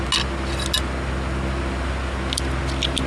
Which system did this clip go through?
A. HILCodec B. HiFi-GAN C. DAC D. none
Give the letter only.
D